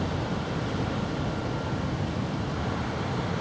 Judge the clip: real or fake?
real